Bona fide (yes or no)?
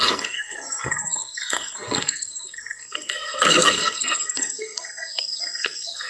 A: no